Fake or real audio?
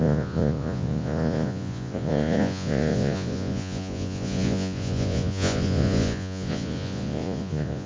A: fake